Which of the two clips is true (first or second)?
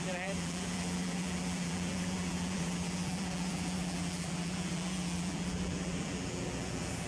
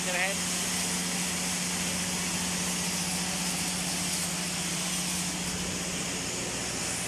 second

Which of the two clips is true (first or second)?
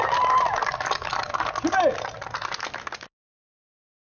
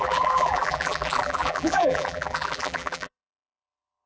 first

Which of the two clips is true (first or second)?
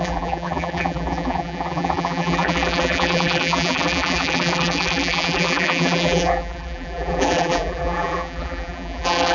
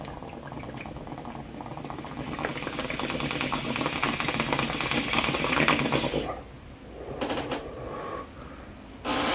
second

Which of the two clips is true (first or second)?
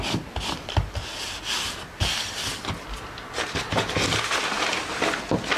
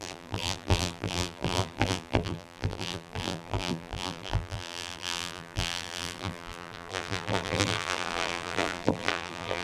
first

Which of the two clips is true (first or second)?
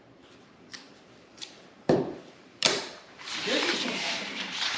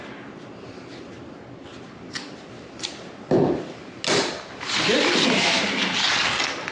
second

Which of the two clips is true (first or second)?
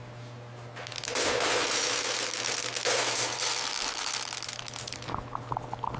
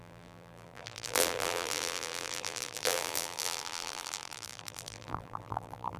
first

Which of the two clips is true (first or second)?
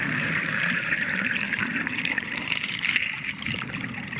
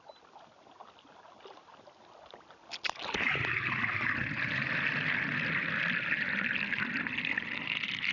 second